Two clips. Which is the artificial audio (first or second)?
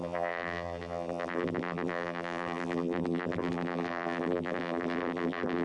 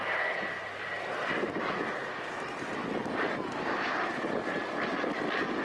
first